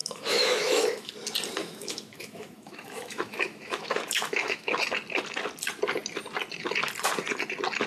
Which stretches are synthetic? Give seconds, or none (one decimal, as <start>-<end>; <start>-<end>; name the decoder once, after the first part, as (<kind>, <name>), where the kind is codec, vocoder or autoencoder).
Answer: 0.0-1.1 (autoencoder, DAC-VAE); 1.6-4.8